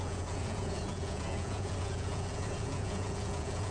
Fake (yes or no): yes